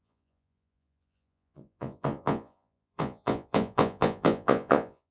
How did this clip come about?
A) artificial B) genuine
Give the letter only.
A